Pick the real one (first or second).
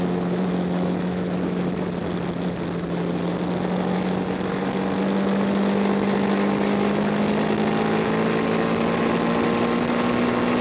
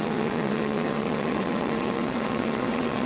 first